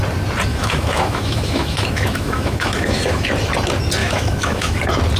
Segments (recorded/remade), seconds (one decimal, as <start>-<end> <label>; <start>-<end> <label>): 0.0-0.5 recorded; 0.5-3.3 remade; 3.3-4.0 recorded; 4.0-4.8 remade; 4.8-5.2 recorded